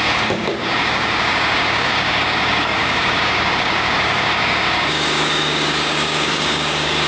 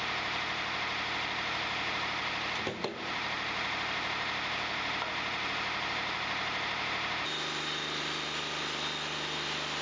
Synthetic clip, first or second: first